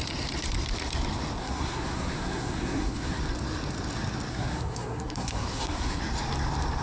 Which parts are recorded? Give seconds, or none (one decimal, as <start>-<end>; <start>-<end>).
0.0-1.4; 3.2-4.3; 6.0-6.8